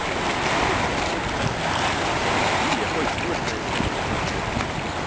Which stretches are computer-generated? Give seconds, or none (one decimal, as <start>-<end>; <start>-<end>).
none